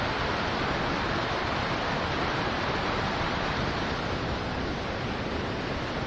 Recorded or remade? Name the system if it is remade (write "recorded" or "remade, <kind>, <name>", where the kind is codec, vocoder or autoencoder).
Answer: recorded